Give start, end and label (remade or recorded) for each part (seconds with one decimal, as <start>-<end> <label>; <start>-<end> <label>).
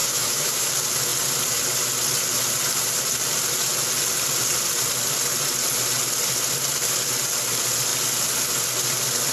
0.0-0.7 remade; 0.7-9.3 recorded